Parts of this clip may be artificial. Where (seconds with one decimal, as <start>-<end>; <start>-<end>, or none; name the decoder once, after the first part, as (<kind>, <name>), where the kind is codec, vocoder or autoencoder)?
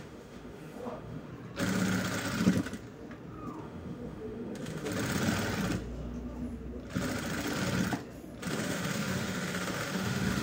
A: 0.0-1.3 (autoencoder, DAC-VAE); 3.6-4.9; 8.5-10.4